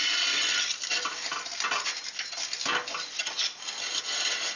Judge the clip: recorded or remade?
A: recorded